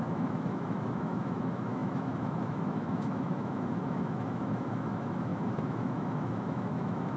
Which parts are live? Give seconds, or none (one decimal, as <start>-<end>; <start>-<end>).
none